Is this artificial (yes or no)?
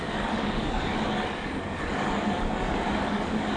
yes